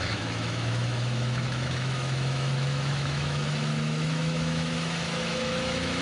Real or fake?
fake